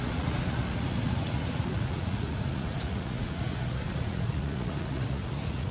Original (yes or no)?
no